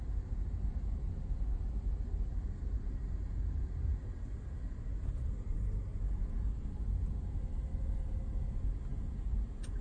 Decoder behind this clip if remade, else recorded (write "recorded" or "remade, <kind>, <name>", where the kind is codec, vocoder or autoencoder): recorded